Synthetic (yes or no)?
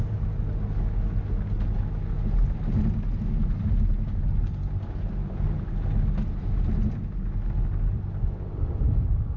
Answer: no